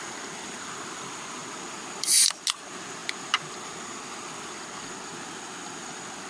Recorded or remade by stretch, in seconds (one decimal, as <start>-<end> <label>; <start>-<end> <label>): 0.0-6.3 recorded